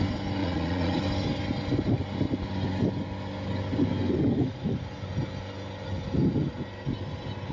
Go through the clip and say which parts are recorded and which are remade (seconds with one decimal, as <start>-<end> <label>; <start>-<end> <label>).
0.0-0.4 recorded; 0.4-1.0 remade; 1.0-7.5 recorded